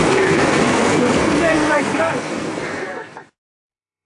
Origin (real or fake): fake